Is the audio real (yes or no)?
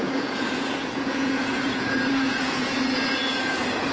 no